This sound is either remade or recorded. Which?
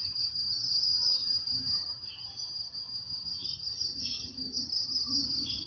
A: remade